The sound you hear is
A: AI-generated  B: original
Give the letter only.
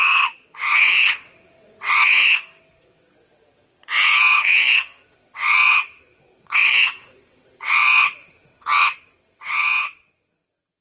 A